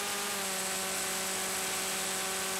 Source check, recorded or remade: recorded